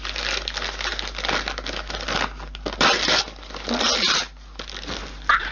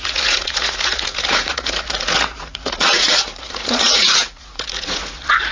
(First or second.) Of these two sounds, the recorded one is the first